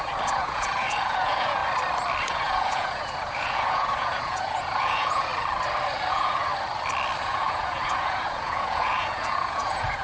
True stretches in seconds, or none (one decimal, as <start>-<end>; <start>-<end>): 1.6-2.2; 5.3-6.1; 6.5-7.2